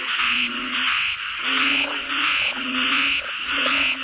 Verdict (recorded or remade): remade